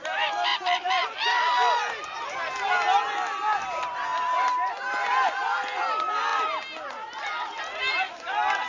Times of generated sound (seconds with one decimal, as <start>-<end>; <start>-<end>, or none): none